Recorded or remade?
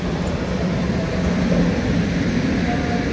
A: recorded